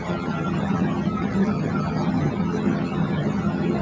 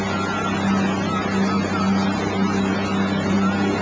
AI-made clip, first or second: first